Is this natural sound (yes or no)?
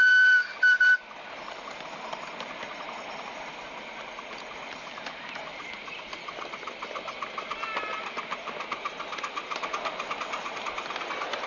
yes